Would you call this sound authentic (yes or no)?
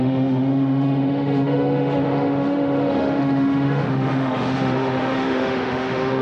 no